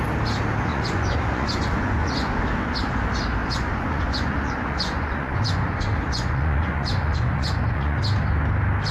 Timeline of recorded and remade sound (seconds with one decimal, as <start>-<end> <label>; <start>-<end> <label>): 0.0-0.7 recorded; 0.7-2.4 remade; 2.4-3.4 recorded; 3.4-8.0 remade; 8.0-8.9 recorded